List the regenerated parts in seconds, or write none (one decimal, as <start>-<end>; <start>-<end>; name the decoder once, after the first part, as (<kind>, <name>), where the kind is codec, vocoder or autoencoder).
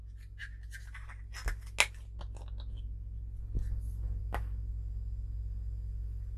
none